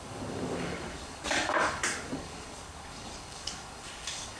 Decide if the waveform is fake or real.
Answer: fake